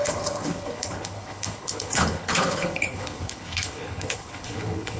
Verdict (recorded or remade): remade